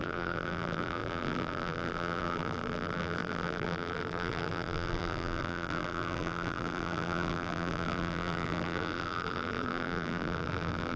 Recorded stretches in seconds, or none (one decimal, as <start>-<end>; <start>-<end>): none